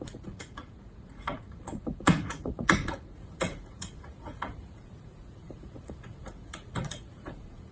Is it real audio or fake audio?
fake